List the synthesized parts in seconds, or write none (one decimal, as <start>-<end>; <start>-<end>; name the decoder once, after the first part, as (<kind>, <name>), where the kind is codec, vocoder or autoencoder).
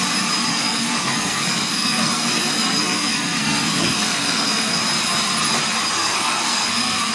0.5-4.8 (codec, SNAC); 6.0-7.1